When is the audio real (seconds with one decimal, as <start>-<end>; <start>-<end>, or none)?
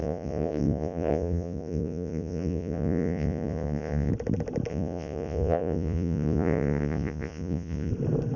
4.1-4.7; 7.9-8.4